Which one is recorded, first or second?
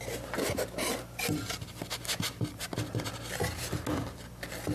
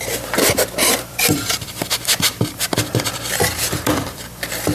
first